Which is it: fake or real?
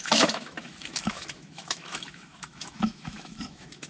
fake